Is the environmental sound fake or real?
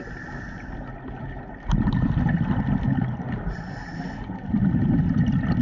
real